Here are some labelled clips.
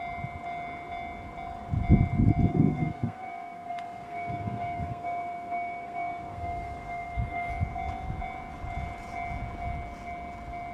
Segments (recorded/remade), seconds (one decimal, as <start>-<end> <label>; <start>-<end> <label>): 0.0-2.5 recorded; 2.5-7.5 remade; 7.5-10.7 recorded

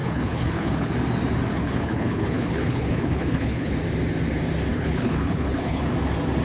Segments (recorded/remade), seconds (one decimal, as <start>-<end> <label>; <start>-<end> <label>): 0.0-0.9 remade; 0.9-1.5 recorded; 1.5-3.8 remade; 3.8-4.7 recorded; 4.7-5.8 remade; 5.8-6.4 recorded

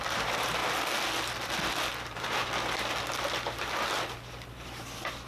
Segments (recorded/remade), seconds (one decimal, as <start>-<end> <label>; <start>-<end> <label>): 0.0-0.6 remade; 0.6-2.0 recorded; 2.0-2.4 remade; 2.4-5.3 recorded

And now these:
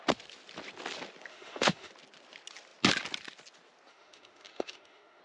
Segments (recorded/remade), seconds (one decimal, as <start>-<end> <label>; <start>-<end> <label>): 0.0-1.3 recorded; 1.3-1.9 remade; 1.9-3.9 recorded; 3.9-5.2 remade

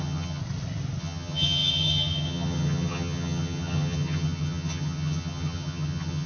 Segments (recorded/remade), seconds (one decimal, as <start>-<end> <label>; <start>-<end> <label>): 0.0-0.4 remade; 0.4-1.0 recorded; 1.0-6.3 remade

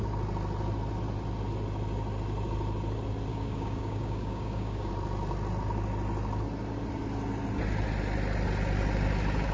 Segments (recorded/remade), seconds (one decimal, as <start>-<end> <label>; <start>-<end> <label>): 0.0-3.3 recorded; 3.3-4.9 remade; 4.9-9.5 recorded